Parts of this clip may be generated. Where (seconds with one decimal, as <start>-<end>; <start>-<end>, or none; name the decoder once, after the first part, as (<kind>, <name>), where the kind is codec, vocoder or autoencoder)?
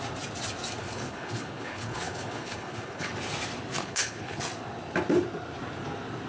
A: 0.8-3.1 (codec, HILCodec); 3.8-4.4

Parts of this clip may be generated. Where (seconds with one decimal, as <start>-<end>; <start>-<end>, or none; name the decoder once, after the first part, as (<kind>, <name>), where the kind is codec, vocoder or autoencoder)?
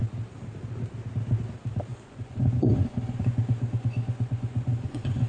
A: 1.9-5.3 (vocoder, Vocos)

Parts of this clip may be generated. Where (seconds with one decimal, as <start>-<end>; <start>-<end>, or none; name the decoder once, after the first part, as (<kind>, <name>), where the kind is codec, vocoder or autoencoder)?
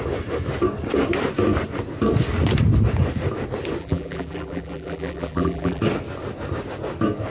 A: 3.8-5.8 (vocoder, BigVGAN v2)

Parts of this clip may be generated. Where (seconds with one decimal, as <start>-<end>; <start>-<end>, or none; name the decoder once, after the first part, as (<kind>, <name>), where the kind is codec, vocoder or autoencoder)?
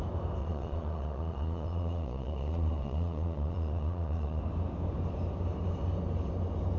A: 0.4-4.4 (vocoder, Vocos)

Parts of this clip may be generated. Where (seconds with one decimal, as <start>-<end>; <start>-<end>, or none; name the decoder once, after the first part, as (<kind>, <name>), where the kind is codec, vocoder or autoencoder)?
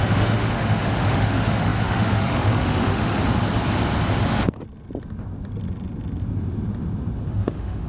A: 0.0-3.2 (autoencoder, DAC-VAE); 7.3-7.9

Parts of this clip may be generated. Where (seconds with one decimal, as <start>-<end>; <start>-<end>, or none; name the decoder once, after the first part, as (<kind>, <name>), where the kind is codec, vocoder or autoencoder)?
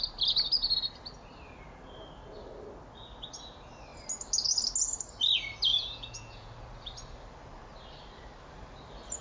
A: 5.7-6.5 (vocoder, Vocos)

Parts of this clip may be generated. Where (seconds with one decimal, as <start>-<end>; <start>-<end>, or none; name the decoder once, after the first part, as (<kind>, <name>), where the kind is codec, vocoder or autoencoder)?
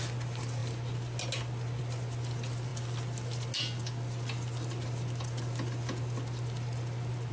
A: none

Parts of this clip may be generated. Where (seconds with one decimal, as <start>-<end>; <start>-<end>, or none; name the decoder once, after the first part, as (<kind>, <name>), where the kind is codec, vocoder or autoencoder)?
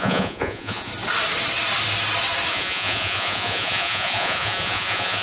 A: 0.0-0.9 (vocoder, Vocos); 2.5-5.2